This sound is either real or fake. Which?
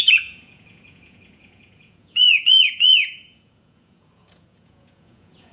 fake